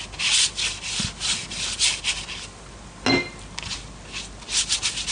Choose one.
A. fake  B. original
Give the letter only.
B